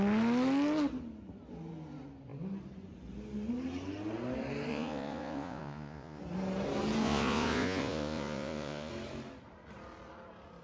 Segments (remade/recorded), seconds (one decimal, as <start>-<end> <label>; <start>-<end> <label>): 0.0-4.7 recorded; 4.7-6.2 remade; 6.2-7.0 recorded; 7.0-8.9 remade; 8.9-10.6 recorded